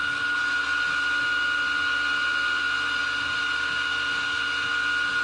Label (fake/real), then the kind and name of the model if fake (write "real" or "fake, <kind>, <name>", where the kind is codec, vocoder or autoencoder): real